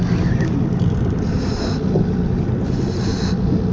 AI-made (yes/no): no